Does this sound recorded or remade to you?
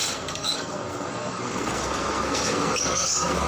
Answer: remade